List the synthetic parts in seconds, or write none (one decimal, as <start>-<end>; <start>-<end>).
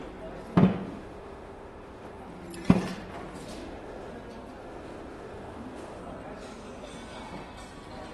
0.7-2.2; 3.5-4.1; 4.6-6.0